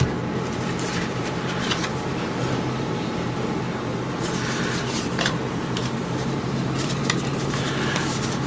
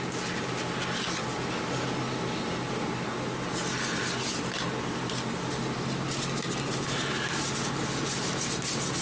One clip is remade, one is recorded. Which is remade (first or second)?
first